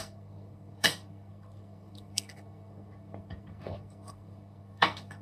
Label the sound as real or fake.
fake